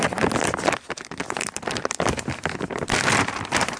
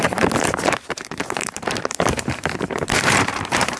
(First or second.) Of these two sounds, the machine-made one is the second